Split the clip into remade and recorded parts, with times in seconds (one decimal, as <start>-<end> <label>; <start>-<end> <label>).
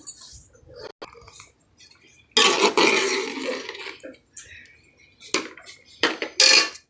0.0-6.9 recorded